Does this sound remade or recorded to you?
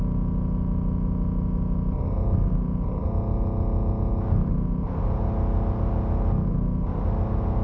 recorded